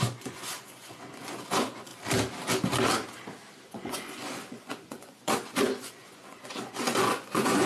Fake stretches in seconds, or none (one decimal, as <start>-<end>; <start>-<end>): 0.0-1.9; 3.6-7.7